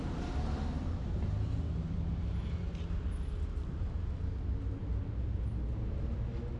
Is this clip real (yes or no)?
yes